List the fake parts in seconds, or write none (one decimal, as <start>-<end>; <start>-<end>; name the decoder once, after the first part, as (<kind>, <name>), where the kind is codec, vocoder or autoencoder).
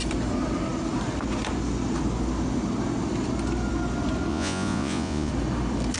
4.3-5.3 (vocoder, Vocos)